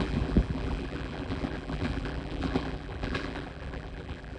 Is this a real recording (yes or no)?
no